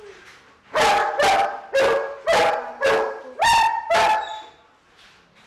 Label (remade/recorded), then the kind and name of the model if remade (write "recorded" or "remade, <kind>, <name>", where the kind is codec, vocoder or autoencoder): recorded